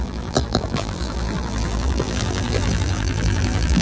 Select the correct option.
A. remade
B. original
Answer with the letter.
A